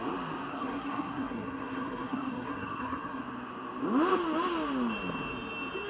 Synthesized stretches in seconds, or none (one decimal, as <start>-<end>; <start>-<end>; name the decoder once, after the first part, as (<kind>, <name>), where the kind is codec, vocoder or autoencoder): 0.5-3.2 (codec, SNAC)